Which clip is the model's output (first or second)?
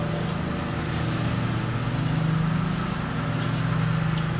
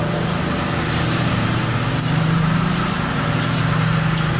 second